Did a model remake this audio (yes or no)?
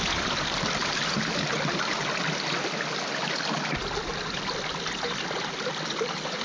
no